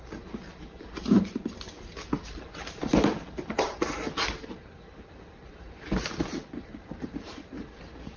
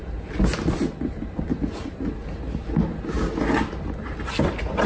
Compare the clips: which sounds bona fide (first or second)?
second